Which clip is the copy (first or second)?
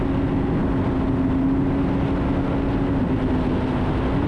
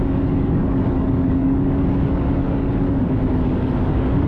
second